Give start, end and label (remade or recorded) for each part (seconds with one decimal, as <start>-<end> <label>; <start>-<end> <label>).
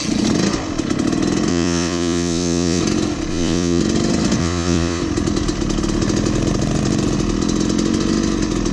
0.0-1.5 recorded; 1.5-2.8 remade; 2.8-3.3 recorded; 3.3-3.8 remade; 3.8-4.4 recorded; 4.4-5.0 remade; 5.0-8.7 recorded